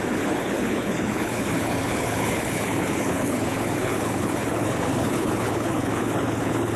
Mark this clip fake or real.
fake